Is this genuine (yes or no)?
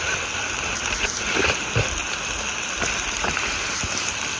yes